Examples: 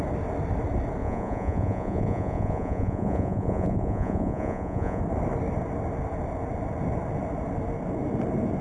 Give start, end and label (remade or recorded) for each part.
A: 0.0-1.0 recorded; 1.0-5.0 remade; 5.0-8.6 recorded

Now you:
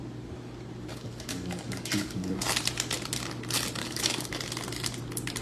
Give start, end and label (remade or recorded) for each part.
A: 0.0-0.9 recorded; 0.9-2.4 remade; 2.4-3.8 recorded; 3.8-4.4 remade; 4.4-5.4 recorded

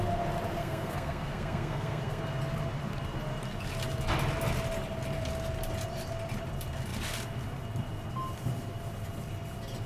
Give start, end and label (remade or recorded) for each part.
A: 0.0-0.6 recorded; 0.6-2.2 remade; 2.2-9.9 recorded

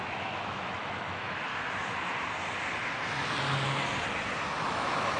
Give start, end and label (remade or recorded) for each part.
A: 0.0-1.5 remade; 1.5-4.6 recorded; 4.6-5.2 remade

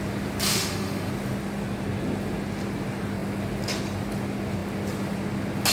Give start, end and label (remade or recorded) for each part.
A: 0.0-0.5 recorded; 0.5-1.1 remade; 1.1-5.7 recorded

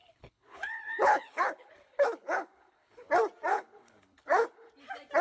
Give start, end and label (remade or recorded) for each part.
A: 0.0-3.1 remade; 3.1-3.5 recorded; 3.5-4.7 remade; 4.7-5.2 recorded

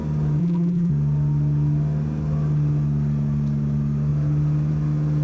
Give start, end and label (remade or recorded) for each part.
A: 0.0-0.4 recorded; 0.4-0.9 remade; 0.9-5.2 recorded